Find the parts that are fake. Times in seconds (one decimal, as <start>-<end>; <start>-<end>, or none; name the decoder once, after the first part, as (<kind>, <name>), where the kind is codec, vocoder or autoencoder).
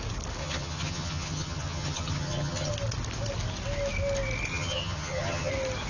0.4-2.7 (vocoder, HiFi-GAN); 4.5-5.5